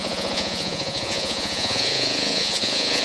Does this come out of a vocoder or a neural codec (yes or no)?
yes